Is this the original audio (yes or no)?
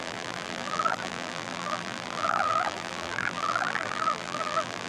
no